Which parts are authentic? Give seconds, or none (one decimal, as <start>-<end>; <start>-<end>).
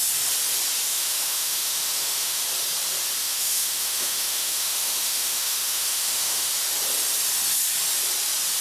0.0-0.9; 2.4-3.2; 6.5-8.6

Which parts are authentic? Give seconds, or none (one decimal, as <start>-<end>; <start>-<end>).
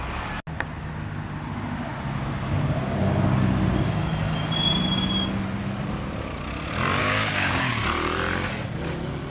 0.0-7.0; 7.7-9.3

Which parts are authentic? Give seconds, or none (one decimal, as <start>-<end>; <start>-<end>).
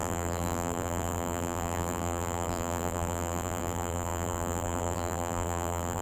none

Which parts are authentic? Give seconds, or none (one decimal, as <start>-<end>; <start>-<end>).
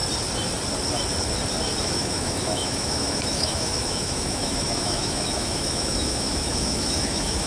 0.0-1.8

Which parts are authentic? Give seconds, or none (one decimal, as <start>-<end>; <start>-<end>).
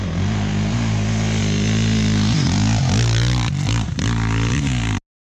0.0-1.4; 4.6-5.3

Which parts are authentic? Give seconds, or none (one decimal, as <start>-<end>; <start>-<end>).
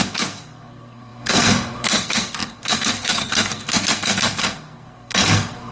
none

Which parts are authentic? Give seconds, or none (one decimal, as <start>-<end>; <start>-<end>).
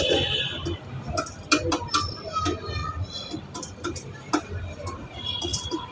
0.0-2.8; 3.4-5.0